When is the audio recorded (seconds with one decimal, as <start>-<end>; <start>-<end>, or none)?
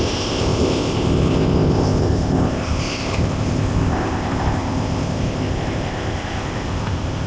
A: none